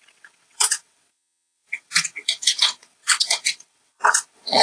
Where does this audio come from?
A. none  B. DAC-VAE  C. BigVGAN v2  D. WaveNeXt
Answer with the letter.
D